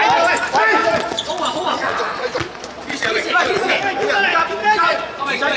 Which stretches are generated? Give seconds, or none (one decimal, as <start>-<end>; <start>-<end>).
0.8-3.7; 4.6-5.6